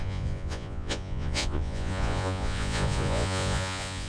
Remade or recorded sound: remade